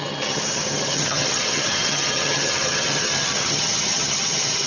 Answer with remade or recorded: remade